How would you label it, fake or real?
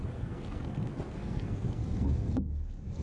fake